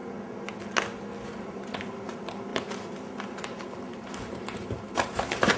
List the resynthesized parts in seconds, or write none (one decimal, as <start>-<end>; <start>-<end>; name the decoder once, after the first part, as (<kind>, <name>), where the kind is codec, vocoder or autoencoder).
1.4-5.6 (vocoder, BigVGAN v2)